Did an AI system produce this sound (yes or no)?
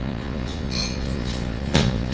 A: yes